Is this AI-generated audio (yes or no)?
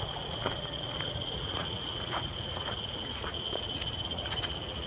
yes